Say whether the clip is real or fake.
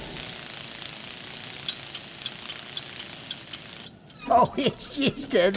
real